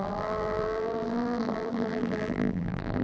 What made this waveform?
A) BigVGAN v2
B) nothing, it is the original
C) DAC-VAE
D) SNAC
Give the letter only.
A